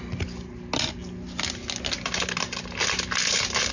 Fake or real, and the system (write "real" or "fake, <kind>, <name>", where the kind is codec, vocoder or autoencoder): real